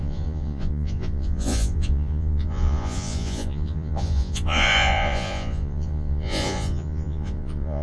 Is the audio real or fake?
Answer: fake